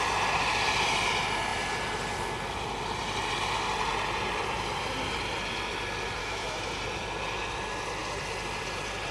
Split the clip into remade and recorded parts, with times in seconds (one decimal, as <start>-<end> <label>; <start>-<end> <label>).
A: 0.0-6.2 recorded; 6.2-6.7 remade; 6.7-9.1 recorded